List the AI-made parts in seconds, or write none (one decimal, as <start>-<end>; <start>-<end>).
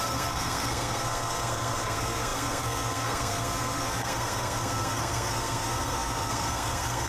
0.0-7.1